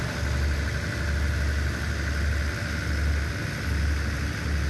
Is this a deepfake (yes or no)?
no